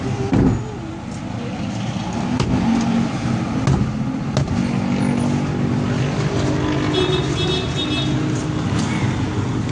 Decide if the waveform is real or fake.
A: real